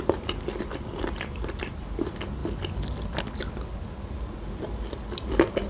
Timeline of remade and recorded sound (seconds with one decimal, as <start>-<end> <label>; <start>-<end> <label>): 0.0-2.4 remade; 2.4-5.3 recorded; 5.3-5.7 remade